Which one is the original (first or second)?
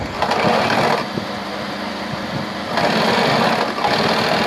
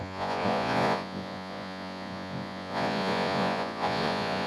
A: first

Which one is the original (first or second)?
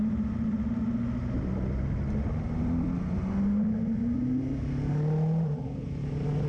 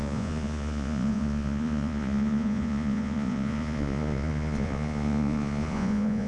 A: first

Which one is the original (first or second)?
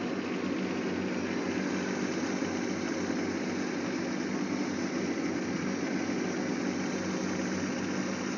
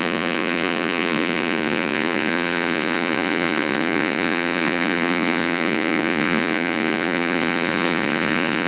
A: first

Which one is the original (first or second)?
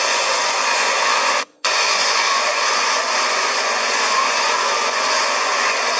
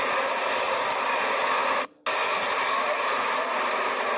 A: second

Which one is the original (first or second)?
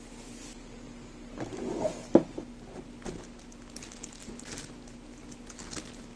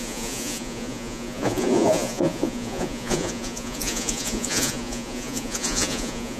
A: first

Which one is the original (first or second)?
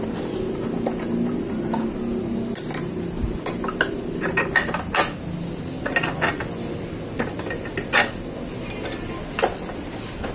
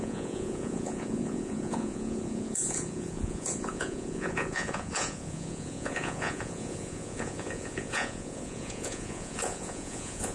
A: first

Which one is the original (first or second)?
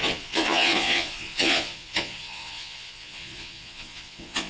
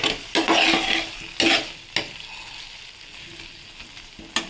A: second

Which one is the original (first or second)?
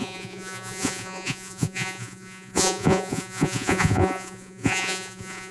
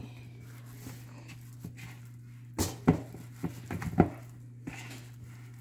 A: second